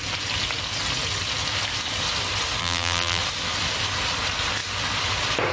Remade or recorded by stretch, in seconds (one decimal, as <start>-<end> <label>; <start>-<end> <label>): 0.0-2.6 recorded; 2.6-3.2 remade; 3.2-5.5 recorded